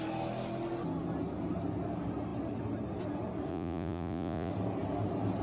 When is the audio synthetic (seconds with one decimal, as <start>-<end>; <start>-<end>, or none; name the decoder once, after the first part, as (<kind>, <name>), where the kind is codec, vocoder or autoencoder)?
3.5-4.5 (vocoder, Vocos)